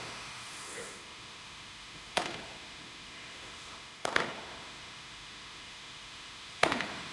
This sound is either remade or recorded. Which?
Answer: remade